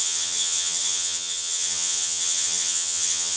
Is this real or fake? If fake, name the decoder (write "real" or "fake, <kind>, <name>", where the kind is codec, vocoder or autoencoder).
fake, vocoder, HiFi-GAN